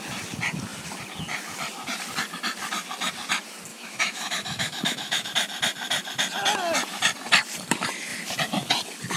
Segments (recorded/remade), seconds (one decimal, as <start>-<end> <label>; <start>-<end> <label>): 0.0-3.7 recorded; 3.7-5.3 remade; 5.3-9.2 recorded